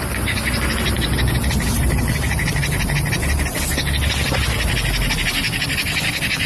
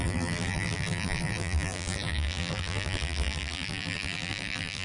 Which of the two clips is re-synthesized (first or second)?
second